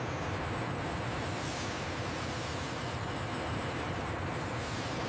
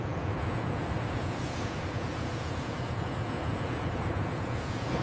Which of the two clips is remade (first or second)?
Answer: second